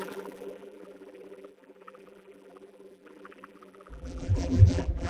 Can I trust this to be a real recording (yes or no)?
no